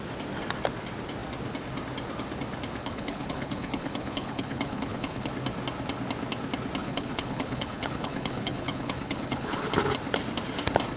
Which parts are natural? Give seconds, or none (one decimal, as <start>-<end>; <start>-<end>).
0.0-2.8; 5.3-6.8; 9.6-11.0

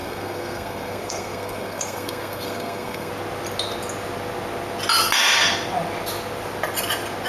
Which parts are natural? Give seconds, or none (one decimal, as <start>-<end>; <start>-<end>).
3.1-7.3

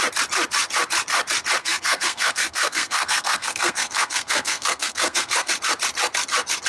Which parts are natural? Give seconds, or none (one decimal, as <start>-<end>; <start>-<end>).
0.0-1.6; 5.5-6.7